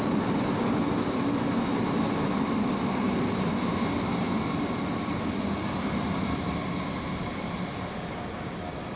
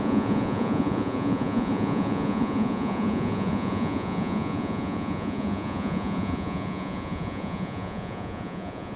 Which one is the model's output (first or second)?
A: second